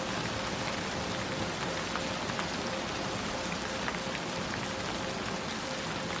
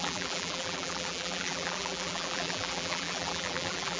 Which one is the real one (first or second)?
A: first